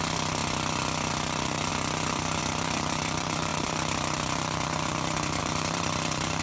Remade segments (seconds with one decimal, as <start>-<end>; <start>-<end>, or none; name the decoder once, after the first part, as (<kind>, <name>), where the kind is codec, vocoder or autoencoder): 0.0-0.4 (vocoder, BigVGAN v2); 1.1-1.7; 2.4-6.4